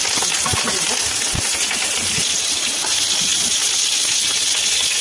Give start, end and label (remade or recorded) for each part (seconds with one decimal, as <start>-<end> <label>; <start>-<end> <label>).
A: 0.0-5.0 recorded